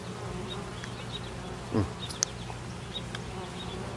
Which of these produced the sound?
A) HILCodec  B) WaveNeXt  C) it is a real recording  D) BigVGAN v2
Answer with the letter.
C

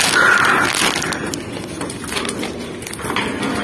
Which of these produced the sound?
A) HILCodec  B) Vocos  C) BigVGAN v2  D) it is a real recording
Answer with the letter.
D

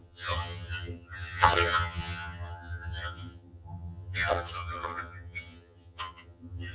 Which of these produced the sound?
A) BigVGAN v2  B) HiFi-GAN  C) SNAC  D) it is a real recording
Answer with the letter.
B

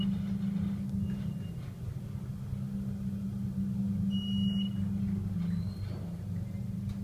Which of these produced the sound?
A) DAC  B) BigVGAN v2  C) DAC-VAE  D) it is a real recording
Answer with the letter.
D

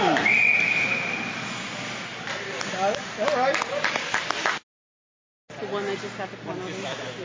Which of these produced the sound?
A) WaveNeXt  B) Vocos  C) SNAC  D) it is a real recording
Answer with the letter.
D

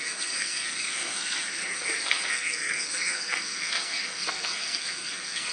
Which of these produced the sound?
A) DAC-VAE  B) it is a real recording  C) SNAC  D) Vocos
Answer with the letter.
C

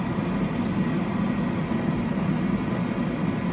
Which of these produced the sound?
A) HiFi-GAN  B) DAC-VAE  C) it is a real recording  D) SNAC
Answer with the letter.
C